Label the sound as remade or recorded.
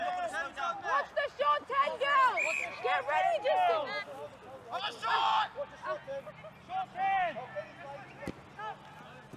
recorded